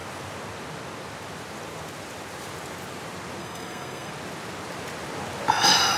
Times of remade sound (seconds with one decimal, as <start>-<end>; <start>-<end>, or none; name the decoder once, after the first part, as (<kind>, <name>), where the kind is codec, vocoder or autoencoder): 3.4-4.1 (codec, SNAC)